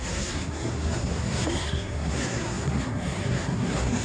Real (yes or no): no